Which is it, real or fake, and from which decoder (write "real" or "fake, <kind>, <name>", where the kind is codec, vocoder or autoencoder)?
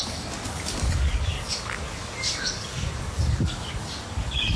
fake, codec, DAC